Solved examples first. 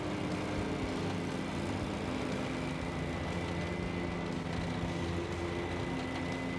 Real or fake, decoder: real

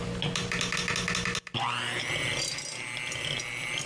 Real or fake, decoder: real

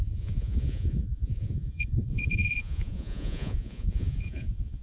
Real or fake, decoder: fake, vocoder, Vocos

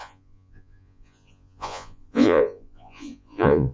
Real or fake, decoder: fake, vocoder, Vocos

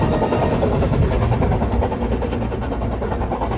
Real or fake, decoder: real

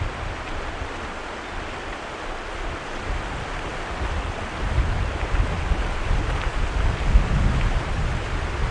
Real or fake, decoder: real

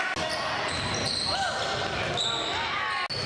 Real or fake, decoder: real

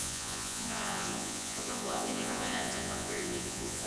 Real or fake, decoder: fake, vocoder, Vocos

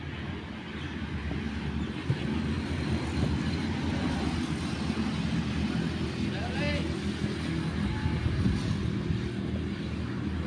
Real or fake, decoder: real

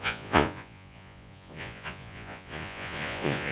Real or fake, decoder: fake, vocoder, Vocos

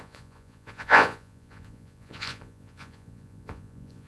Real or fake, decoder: fake, vocoder, Vocos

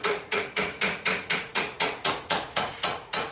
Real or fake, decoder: fake, vocoder, Vocos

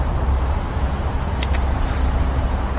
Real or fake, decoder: real